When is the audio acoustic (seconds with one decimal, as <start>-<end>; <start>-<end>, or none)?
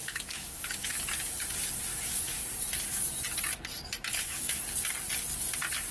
1.0-1.9; 2.4-4.1; 4.6-5.9